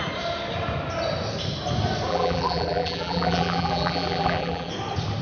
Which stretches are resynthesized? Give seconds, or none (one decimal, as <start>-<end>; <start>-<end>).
2.1-4.7